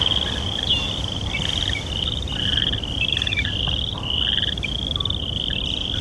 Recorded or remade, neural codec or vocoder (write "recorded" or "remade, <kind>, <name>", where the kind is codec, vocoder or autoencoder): recorded